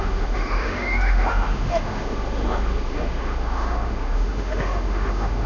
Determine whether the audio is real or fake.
fake